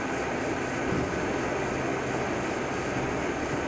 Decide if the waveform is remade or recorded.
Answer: recorded